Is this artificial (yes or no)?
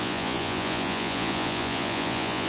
yes